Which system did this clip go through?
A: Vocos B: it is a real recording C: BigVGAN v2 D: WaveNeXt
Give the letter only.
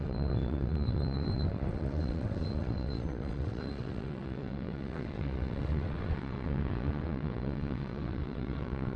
D